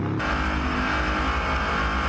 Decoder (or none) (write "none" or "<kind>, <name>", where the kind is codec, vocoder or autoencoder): none